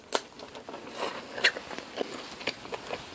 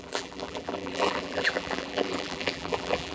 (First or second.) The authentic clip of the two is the first